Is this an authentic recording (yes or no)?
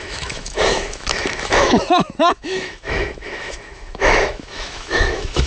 no